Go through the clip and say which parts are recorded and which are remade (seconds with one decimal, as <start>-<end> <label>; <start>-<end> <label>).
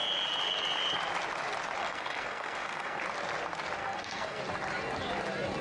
0.0-1.8 recorded; 1.8-3.0 remade; 3.0-3.8 recorded; 3.8-4.4 remade; 4.4-5.6 recorded